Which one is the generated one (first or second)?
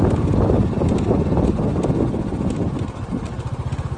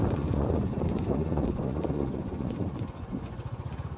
second